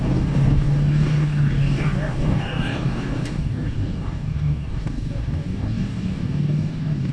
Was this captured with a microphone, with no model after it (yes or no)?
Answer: no